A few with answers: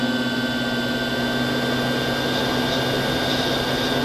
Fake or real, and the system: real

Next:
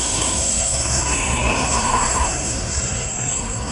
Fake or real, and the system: fake, codec, SNAC